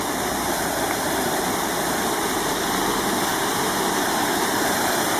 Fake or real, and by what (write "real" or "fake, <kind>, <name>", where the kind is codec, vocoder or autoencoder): real